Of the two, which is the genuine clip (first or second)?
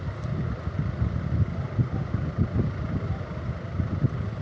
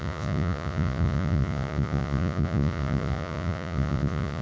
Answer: first